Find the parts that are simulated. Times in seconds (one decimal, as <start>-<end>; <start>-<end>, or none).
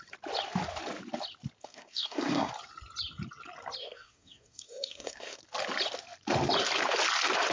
1.6-2.5; 3.8-5.4